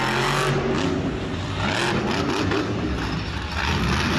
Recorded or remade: recorded